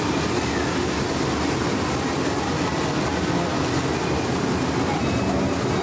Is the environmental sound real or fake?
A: real